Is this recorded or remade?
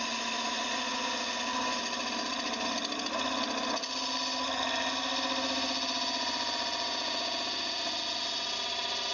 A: recorded